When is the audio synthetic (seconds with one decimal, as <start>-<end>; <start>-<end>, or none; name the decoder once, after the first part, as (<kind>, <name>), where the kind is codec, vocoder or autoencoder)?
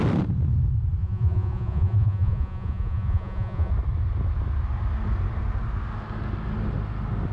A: 1.0-3.7 (vocoder, Vocos)